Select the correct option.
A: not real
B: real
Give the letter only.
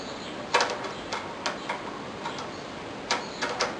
B